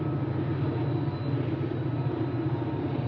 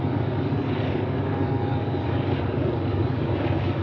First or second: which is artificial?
second